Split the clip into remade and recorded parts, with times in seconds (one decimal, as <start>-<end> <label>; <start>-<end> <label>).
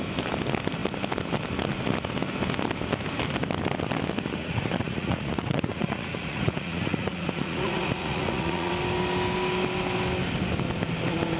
0.0-4.4 recorded; 4.4-8.7 remade; 8.7-11.4 recorded